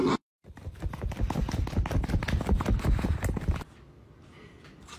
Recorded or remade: recorded